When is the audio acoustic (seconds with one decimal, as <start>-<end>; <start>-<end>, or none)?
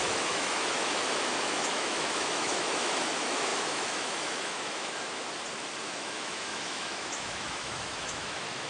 5.2-5.8